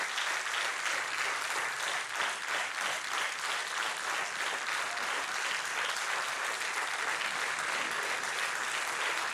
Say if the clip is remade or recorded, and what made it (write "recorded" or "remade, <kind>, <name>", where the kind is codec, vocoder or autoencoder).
recorded